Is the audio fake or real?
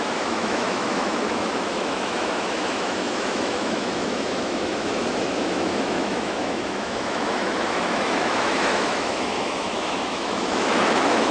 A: fake